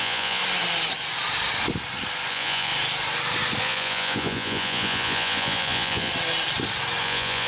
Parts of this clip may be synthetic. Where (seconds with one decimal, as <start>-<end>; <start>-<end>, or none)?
0.0-0.4; 2.3-2.7; 3.6-6.1; 7.0-7.5